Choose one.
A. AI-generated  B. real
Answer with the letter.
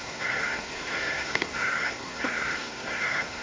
A